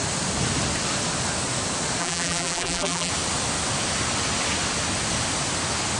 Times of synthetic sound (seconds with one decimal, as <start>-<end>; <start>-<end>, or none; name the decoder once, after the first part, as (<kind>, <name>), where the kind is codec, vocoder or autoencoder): 2.0-3.1 (vocoder, BigVGAN v2)